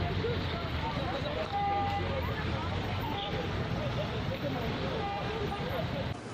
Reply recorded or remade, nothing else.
remade